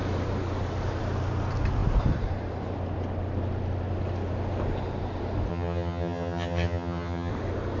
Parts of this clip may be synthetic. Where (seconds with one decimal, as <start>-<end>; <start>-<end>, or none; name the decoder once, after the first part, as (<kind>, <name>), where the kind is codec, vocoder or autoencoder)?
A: 5.5-7.3 (vocoder, HiFi-GAN)